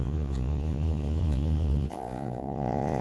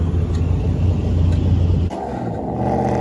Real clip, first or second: second